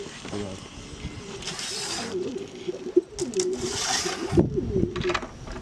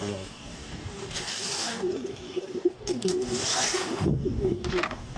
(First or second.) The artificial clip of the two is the second